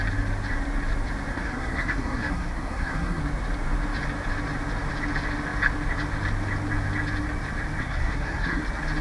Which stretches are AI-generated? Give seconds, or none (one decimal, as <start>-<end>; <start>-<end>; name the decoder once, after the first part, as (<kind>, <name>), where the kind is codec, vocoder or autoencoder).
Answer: 1.3-3.2 (codec, SNAC); 7.8-8.6